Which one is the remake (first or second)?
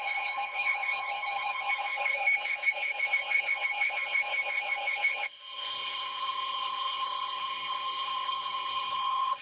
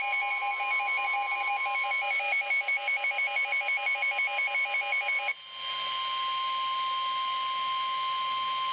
first